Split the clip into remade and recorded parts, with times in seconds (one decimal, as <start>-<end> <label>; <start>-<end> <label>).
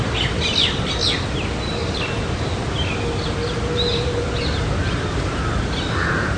0.0-6.4 recorded